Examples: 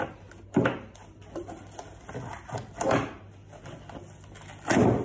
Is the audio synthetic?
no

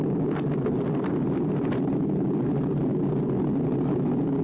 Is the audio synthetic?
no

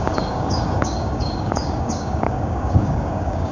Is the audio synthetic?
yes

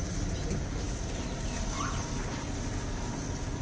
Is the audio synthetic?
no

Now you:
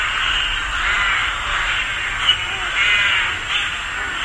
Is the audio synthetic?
no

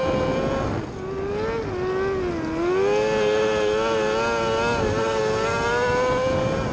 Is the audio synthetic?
no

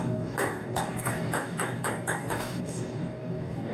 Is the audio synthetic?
yes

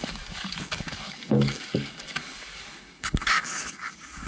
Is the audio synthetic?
yes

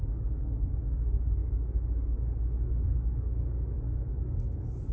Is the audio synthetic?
yes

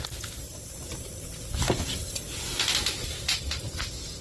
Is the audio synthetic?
no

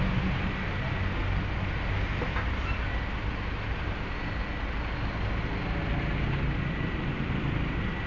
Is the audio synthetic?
no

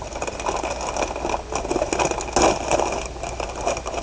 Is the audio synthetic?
no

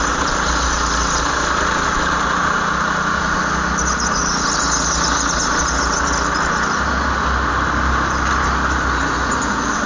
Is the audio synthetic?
no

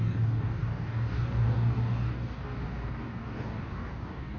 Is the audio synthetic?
yes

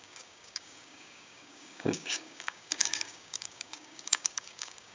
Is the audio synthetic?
yes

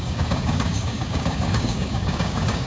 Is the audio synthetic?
yes